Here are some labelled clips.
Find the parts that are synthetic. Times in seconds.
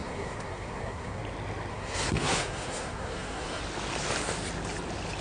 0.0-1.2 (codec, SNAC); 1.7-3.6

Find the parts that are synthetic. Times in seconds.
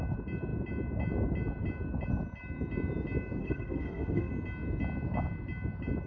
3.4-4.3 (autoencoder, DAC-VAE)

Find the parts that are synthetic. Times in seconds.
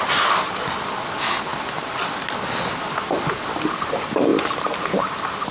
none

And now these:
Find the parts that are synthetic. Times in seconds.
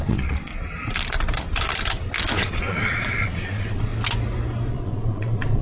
0.0-0.5 (vocoder, Vocos); 2.4-3.9; 4.7-5.6